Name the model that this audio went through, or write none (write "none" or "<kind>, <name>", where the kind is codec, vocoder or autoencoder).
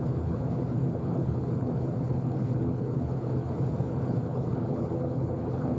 codec, HILCodec